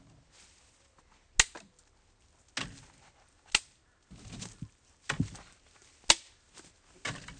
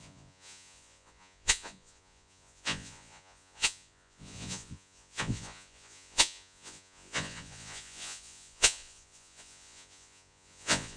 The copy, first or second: second